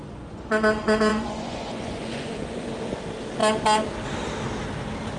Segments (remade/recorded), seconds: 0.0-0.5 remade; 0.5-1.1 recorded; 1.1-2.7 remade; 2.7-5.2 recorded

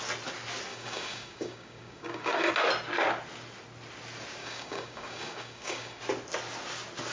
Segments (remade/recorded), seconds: 0.0-0.7 recorded; 0.7-2.5 remade; 2.5-4.4 recorded; 4.4-6.0 remade; 6.0-7.1 recorded